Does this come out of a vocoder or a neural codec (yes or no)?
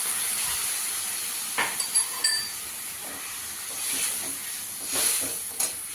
no